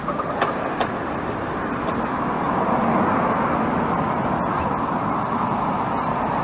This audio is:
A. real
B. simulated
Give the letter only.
A